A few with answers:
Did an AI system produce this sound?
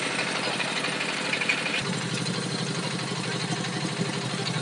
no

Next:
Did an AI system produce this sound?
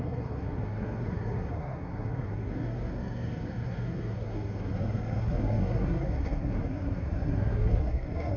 yes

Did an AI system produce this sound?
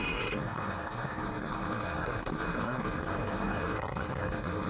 yes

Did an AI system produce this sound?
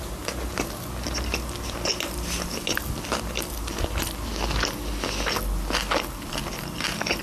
no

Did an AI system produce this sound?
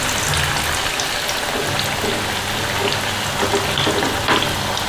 no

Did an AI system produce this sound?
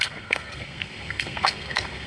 yes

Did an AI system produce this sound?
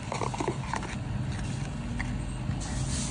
no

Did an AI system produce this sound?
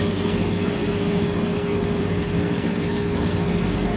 yes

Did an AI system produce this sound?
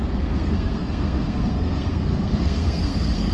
yes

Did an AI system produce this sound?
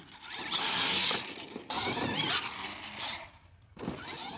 no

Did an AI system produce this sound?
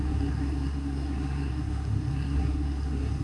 yes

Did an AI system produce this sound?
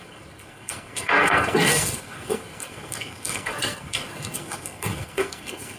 yes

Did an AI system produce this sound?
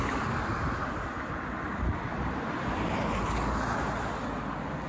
no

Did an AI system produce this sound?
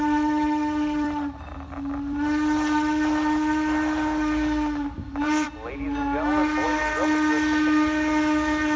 no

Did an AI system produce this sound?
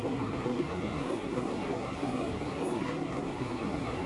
yes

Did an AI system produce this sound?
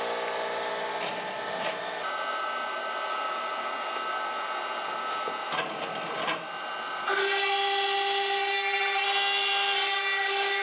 no